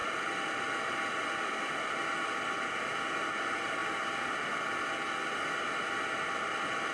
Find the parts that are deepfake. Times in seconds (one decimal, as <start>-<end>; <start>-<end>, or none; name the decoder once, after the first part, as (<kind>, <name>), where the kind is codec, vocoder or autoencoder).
none